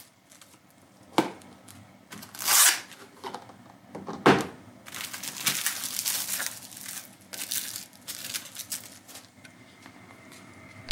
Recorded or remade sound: recorded